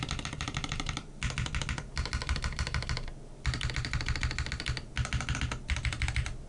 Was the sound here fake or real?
real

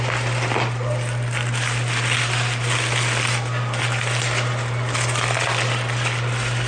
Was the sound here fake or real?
real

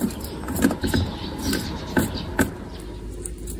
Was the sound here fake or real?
real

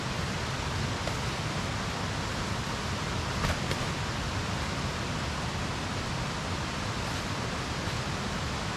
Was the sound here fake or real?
real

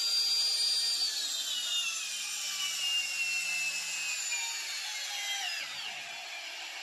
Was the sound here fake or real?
real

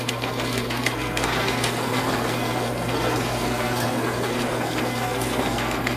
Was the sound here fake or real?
fake